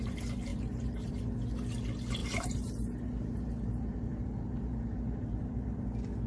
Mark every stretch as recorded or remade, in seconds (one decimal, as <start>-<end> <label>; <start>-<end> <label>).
0.0-0.5 recorded; 0.5-1.1 remade; 1.1-2.2 recorded; 2.2-5.8 remade; 5.8-6.3 recorded